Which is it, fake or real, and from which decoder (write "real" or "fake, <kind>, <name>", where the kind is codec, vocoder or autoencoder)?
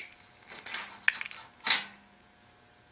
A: real